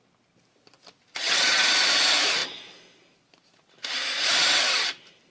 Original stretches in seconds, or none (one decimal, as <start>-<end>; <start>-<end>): 0.0-1.2; 1.7-5.3